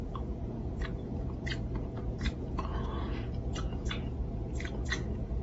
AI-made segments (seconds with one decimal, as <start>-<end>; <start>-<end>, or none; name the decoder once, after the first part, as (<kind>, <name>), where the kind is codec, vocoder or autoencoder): 0.0-5.4 (vocoder, Vocos)